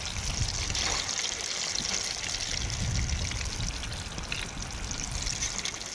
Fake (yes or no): no